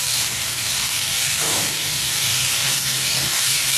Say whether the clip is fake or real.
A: fake